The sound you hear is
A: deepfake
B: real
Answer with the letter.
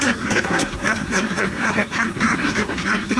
A